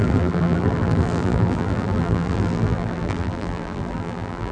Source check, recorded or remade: remade